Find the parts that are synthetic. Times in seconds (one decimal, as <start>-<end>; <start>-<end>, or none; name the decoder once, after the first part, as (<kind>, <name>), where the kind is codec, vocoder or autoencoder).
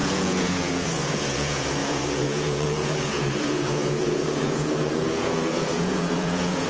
0.0-6.7 (vocoder, Vocos)